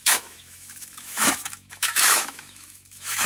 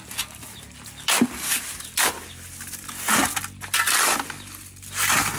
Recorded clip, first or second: second